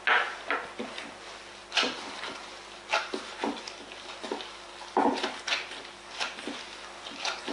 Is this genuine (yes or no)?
yes